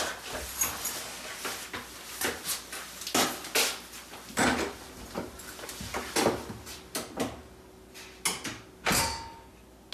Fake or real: real